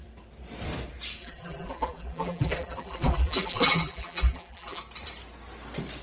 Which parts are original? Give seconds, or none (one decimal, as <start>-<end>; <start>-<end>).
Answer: 0.0-1.2; 4.8-6.0